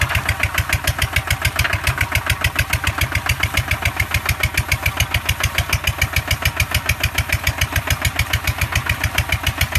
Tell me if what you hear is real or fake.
real